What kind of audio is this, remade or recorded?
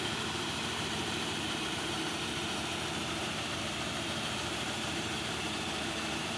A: remade